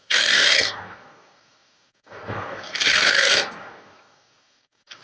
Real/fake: fake